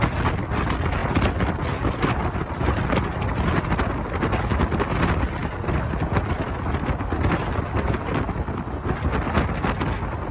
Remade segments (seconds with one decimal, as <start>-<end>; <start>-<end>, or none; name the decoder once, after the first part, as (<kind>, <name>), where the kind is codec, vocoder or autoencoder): none